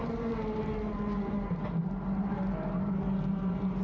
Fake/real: fake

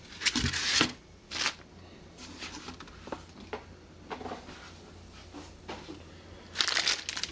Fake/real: real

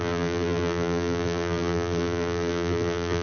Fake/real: fake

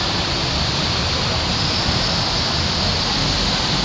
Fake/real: fake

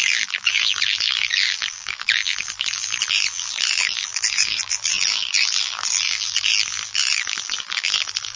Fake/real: fake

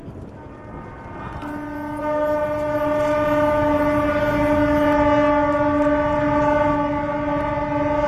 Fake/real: real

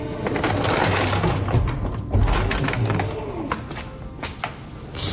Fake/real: real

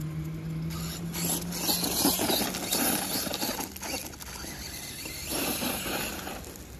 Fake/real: real